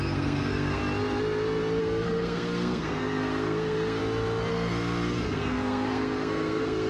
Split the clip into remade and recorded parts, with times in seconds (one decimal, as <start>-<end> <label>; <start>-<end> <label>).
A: 0.0-0.8 remade; 0.8-1.8 recorded; 1.8-4.0 remade; 4.0-4.5 recorded; 4.5-6.9 remade